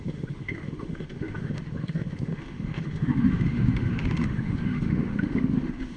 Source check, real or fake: fake